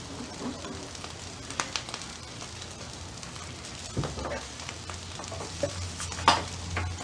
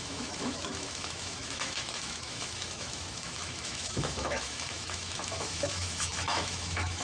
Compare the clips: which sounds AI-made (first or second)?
second